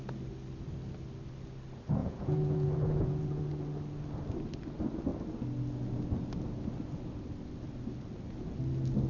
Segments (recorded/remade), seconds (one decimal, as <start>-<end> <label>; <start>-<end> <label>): 0.0-2.0 recorded; 2.0-3.4 remade; 3.4-9.1 recorded